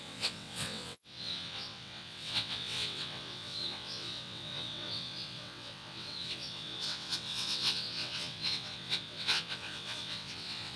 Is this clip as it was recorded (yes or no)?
no